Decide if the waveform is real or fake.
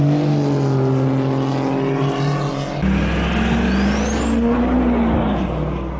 real